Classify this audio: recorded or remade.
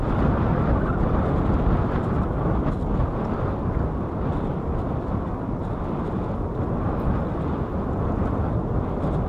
recorded